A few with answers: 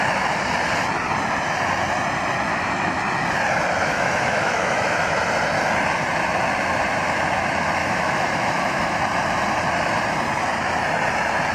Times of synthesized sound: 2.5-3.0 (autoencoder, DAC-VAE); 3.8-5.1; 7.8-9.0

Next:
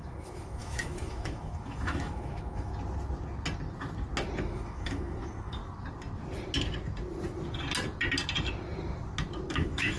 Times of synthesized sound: 0.0-2.7 (autoencoder, DAC-VAE); 4.4-5.6; 9.5-10.0

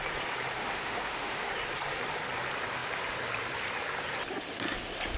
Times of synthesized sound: 0.6-1.5 (autoencoder, DAC-VAE)

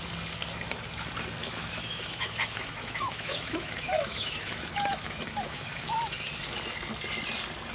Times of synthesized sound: 1.4-5.9 (autoencoder, DAC-VAE)

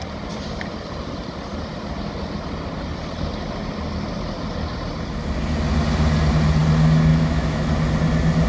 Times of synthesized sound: 7.1-7.7 (autoencoder, DAC-VAE)

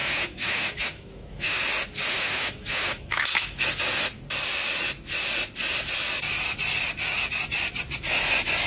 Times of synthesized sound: 0.0-1.6 (autoencoder, DAC-VAE); 2.1-3.6

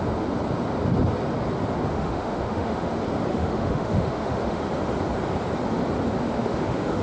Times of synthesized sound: 1.9-2.9 (autoencoder, DAC-VAE); 3.3-4.6; 6.2-7.0

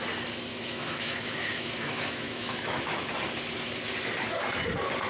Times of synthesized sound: 0.5-3.1 (autoencoder, DAC-VAE)